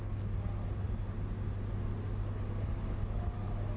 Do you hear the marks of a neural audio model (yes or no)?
no